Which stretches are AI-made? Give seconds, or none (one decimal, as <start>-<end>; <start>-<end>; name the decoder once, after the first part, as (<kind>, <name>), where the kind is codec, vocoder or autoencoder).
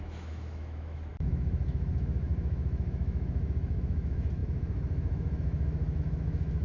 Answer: 0.0-6.6 (autoencoder, DAC-VAE)